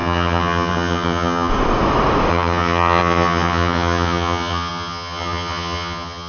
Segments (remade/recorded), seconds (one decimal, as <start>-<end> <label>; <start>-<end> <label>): 0.0-1.5 remade; 1.5-2.3 recorded; 2.3-6.3 remade